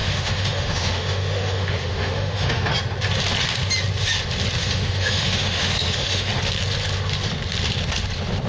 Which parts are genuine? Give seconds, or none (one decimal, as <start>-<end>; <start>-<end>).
2.7-4.6; 6.3-8.5